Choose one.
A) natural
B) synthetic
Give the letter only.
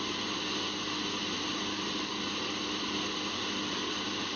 A